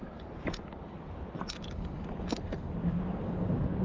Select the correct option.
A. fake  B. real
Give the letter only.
B